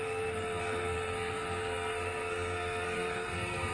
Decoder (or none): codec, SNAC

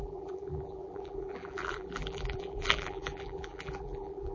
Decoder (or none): vocoder, BigVGAN v2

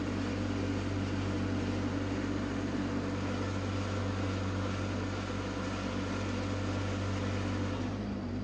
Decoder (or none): none